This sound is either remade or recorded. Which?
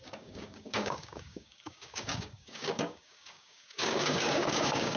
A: remade